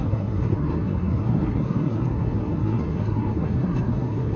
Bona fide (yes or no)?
no